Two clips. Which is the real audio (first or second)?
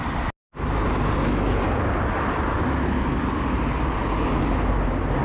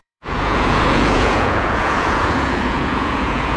first